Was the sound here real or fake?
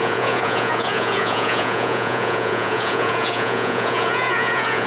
fake